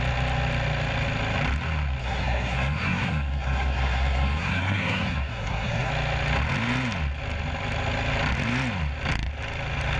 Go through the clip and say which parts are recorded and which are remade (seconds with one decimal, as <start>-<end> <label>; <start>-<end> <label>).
0.0-2.0 recorded; 2.0-5.9 remade; 5.9-10.0 recorded